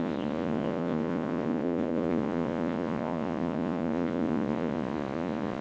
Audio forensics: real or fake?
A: fake